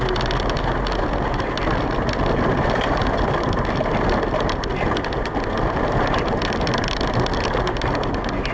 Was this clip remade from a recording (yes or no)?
no